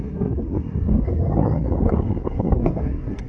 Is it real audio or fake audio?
fake